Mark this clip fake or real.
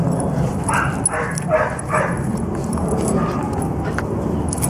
fake